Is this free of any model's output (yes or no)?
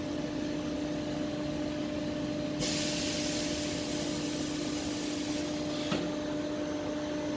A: yes